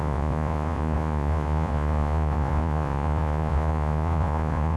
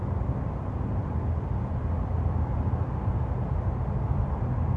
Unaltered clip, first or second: second